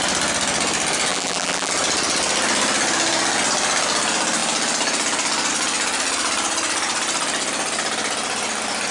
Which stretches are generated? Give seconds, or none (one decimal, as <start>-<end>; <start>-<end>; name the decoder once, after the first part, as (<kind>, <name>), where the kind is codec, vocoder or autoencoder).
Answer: 1.1-1.7 (vocoder, BigVGAN v2)